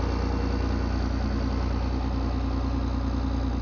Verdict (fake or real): real